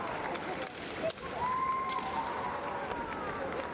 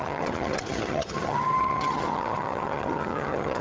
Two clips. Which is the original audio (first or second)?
first